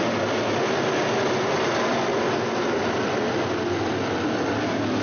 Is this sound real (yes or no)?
yes